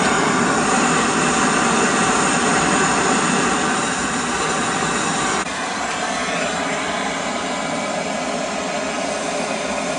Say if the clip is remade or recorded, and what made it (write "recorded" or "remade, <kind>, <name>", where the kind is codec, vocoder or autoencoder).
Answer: recorded